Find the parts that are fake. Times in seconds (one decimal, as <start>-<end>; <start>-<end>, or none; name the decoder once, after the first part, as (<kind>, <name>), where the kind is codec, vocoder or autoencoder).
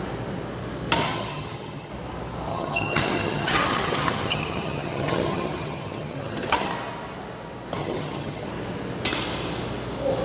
1.0-1.9 (vocoder, HiFi-GAN); 2.5-6.7; 7.8-8.5